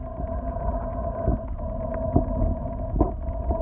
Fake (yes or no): no